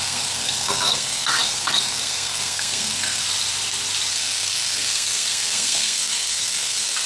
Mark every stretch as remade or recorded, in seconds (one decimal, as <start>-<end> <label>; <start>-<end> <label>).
0.0-3.2 remade; 3.2-4.1 recorded; 4.1-7.1 remade